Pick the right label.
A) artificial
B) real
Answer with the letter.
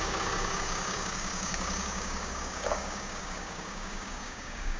A